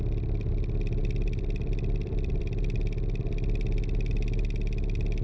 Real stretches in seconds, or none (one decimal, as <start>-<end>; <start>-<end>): 0.0-1.0; 4.1-5.2